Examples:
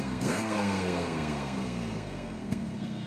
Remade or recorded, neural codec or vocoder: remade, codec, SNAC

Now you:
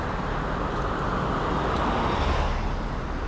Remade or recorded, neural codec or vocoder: recorded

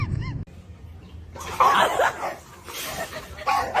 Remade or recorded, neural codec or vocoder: recorded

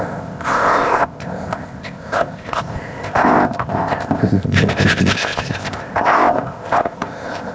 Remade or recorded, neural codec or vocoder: remade, codec, ZipCodec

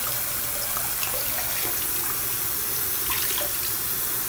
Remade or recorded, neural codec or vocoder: recorded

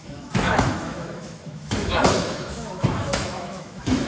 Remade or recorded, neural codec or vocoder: remade, autoencoder, DAC-VAE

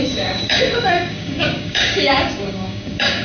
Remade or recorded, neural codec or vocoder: remade, codec, DAC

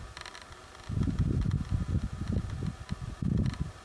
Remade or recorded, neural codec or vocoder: recorded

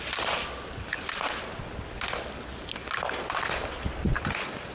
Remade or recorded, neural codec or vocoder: recorded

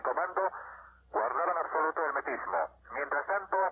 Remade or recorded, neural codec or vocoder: remade, vocoder, BigVGAN v2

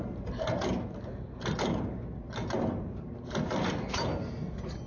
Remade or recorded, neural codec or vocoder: recorded